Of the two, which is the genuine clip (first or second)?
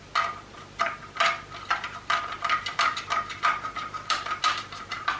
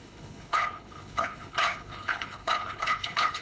first